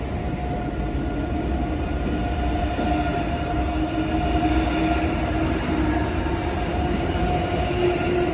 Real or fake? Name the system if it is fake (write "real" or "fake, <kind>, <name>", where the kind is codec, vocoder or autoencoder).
real